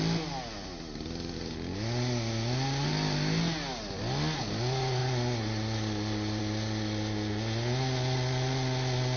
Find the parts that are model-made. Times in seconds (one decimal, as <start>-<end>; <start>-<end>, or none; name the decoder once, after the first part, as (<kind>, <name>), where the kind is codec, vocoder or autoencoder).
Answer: none